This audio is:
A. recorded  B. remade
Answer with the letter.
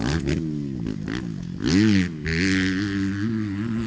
A